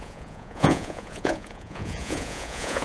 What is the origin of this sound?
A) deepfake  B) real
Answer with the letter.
A